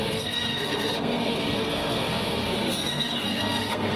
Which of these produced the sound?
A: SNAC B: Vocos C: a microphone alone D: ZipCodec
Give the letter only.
A